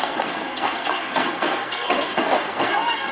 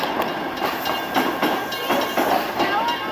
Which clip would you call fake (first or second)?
first